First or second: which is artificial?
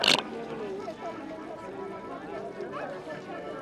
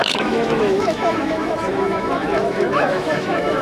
second